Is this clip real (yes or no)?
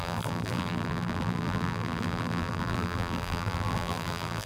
no